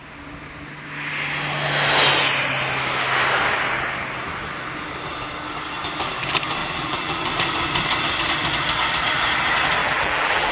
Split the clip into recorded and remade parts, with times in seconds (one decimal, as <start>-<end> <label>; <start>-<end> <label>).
0.0-6.6 recorded; 6.6-7.2 remade; 7.2-9.8 recorded; 9.8-10.5 remade